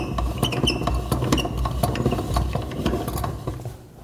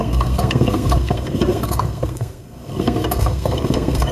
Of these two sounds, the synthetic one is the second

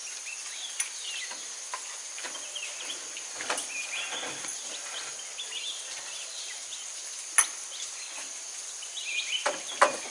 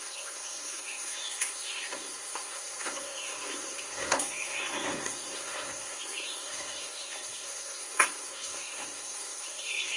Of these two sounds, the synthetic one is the second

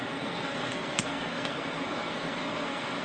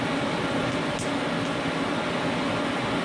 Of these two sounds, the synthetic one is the first